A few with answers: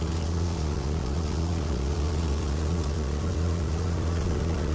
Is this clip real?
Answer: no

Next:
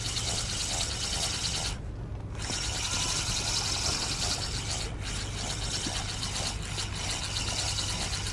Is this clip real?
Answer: yes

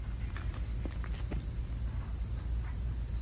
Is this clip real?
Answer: yes